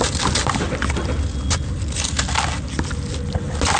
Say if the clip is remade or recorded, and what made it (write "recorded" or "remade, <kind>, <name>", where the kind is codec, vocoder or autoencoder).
recorded